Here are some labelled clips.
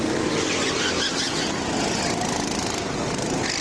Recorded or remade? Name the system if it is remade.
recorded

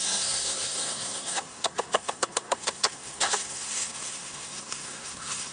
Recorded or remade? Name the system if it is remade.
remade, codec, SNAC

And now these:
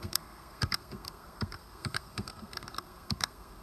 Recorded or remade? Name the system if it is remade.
remade, codec, SNAC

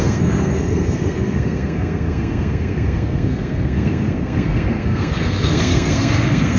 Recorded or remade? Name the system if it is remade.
remade, codec, SNAC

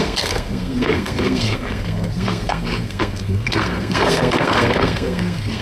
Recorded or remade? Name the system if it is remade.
remade, codec, SNAC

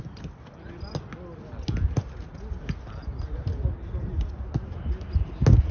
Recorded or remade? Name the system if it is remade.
recorded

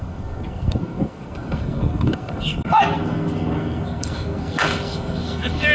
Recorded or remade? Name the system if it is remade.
remade, codec, SNAC